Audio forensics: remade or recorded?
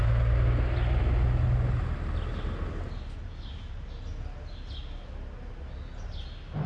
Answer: recorded